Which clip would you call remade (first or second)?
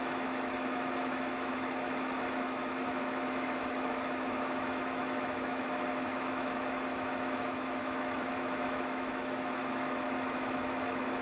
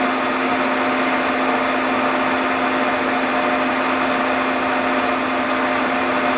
first